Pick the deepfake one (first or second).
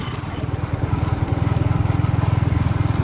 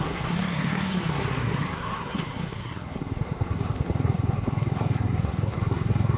second